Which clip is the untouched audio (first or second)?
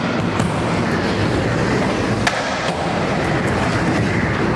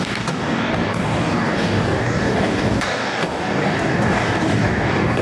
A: first